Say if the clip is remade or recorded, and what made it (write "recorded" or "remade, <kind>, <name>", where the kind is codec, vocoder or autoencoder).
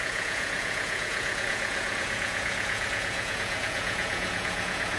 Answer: remade, vocoder, Vocos